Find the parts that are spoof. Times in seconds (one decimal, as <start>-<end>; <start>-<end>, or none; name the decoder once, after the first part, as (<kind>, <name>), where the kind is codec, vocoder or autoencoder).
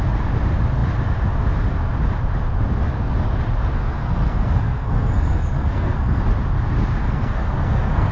3.7-6.2 (codec, SNAC); 7.0-8.1